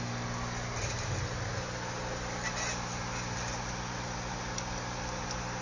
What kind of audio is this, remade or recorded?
recorded